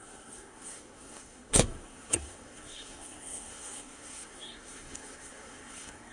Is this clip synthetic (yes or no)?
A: yes